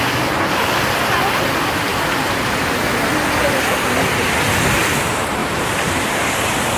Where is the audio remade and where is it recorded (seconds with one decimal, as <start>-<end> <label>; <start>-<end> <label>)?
0.0-1.9 recorded; 1.9-3.0 remade; 3.0-5.4 recorded; 5.4-6.8 remade